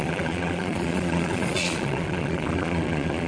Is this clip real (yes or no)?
no